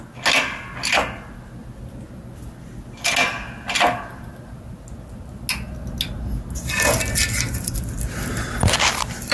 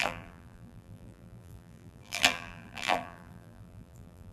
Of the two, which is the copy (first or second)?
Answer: second